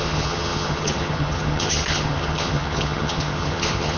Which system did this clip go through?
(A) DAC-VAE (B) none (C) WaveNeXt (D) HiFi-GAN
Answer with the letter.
D